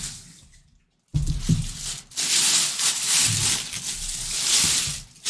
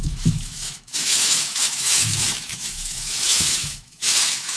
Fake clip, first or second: second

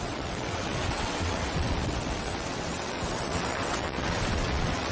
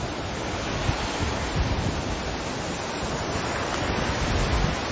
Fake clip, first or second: first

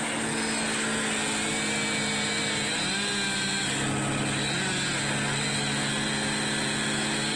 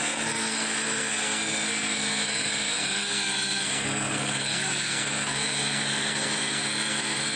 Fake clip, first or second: second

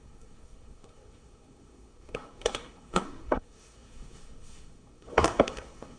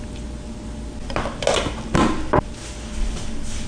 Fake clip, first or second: first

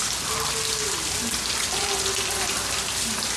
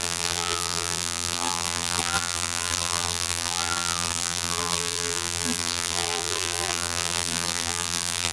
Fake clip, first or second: second